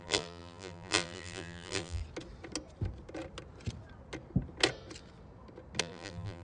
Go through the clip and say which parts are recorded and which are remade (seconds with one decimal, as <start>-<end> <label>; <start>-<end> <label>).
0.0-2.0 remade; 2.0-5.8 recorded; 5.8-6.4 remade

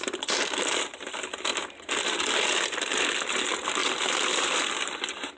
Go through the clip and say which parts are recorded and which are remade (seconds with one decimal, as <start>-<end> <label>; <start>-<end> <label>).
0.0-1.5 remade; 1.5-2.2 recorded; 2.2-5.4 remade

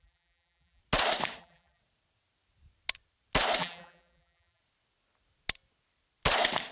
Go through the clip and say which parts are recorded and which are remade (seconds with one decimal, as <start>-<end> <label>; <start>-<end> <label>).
0.0-0.8 remade; 0.8-1.4 recorded; 1.4-1.8 remade; 1.8-3.6 recorded; 3.6-4.6 remade; 4.6-6.7 recorded